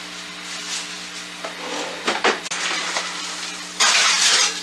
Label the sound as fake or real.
real